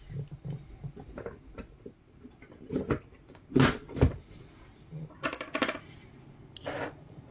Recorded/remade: recorded